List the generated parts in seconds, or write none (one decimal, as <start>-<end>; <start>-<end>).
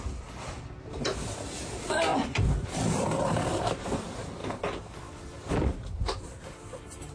0.0-4.4; 5.5-7.1